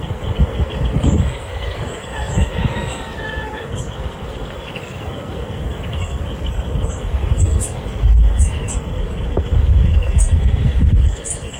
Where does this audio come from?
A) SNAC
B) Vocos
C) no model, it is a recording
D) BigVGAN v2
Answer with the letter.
A